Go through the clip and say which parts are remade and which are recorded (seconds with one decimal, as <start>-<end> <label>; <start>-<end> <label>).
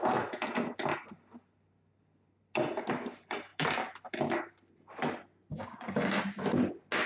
0.0-5.5 recorded; 5.5-6.2 remade; 6.2-7.1 recorded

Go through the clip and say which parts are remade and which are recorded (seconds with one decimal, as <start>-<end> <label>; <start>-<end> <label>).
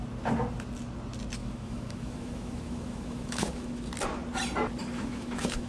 0.0-1.4 recorded; 1.4-3.9 remade; 3.9-4.8 recorded; 4.8-5.7 remade